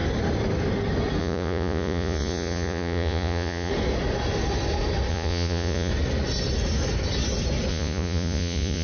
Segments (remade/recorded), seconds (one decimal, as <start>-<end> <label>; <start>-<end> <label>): 0.0-1.2 recorded; 1.2-3.7 remade; 3.7-5.1 recorded; 5.1-5.9 remade; 5.9-7.7 recorded; 7.7-8.8 remade